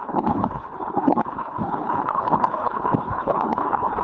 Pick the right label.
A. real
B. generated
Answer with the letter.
B